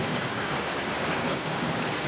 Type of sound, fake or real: fake